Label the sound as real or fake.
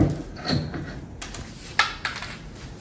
real